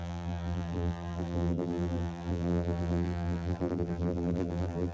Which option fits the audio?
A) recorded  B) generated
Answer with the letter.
B